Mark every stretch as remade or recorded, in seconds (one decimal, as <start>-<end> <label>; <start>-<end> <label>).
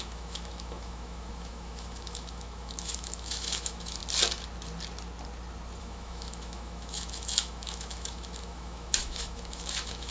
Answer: 0.0-4.0 remade; 4.0-5.8 recorded; 5.8-10.1 remade